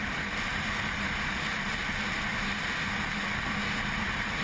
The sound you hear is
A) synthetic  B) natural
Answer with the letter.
B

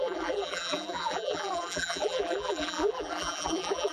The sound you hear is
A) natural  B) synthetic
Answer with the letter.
B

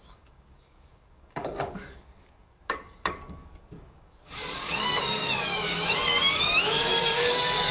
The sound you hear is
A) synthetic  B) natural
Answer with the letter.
A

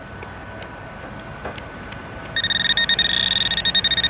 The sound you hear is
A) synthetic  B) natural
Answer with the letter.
B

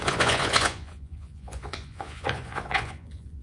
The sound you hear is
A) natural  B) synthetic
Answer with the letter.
B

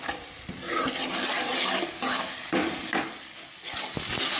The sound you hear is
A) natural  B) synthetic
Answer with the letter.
A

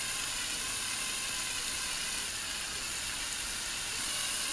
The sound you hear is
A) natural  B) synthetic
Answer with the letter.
A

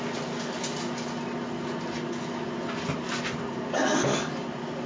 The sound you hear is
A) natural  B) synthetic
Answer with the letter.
A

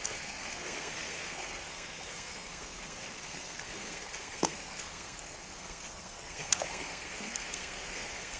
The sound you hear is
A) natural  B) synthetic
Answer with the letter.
B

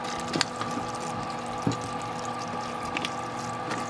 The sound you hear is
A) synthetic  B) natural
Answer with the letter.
B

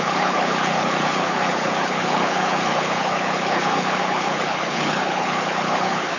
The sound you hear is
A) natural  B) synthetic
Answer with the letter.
B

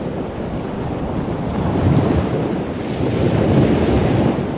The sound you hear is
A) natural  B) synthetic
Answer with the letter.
A